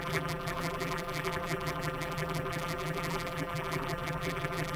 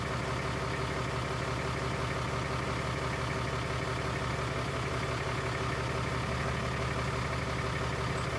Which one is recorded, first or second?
second